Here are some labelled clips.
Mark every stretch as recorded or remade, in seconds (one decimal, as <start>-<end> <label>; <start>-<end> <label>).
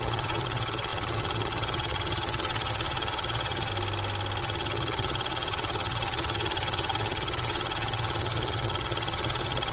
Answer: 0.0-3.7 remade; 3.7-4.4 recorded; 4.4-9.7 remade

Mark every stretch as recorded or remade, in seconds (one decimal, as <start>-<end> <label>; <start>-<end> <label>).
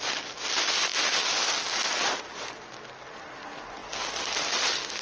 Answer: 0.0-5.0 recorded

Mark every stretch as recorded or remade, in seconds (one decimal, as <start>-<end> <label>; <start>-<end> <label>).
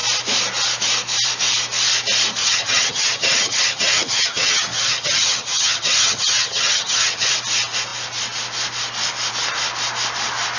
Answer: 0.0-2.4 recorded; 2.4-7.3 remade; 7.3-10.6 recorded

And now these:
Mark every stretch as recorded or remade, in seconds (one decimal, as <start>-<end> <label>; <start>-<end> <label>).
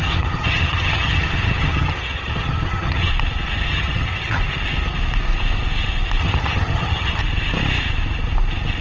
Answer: 0.0-3.1 remade; 3.1-3.7 recorded; 3.7-4.4 remade; 4.4-6.2 recorded; 6.2-7.2 remade; 7.2-8.8 recorded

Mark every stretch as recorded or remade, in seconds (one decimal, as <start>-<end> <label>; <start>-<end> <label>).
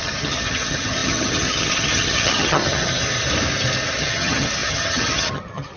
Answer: 0.0-3.0 remade; 3.0-4.0 recorded; 4.0-5.8 remade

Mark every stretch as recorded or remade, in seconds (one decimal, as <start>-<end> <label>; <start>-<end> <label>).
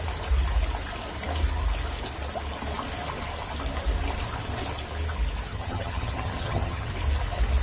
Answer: 0.0-5.5 recorded; 5.5-6.9 remade; 6.9-7.6 recorded